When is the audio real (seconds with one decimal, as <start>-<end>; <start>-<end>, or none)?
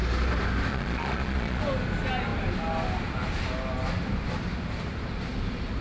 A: 0.0-0.7; 1.6-5.8